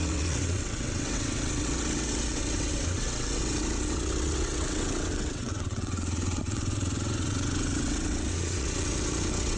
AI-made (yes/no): yes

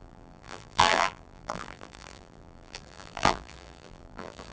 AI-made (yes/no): yes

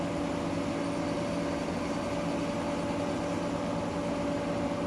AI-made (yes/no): no